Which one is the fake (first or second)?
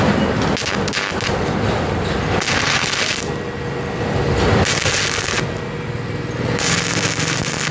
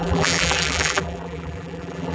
second